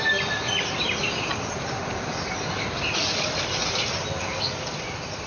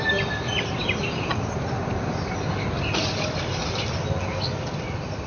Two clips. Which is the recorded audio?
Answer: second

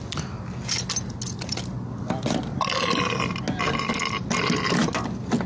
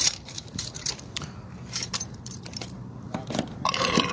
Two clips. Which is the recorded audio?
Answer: first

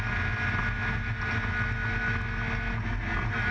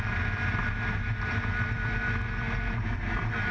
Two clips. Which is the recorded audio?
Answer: first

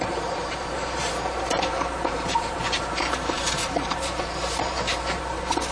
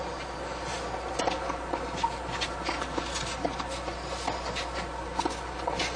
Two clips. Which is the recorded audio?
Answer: second